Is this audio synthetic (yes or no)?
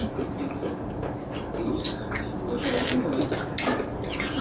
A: no